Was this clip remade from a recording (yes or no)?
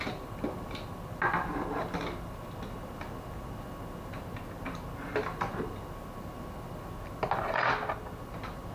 no